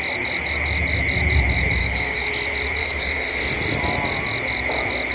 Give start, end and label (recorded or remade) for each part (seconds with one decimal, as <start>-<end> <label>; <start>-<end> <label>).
0.0-1.8 recorded; 1.8-2.3 remade; 2.3-2.8 recorded; 2.8-3.4 remade; 3.4-5.1 recorded